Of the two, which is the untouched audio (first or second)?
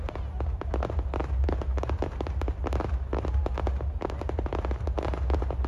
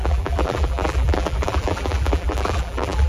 first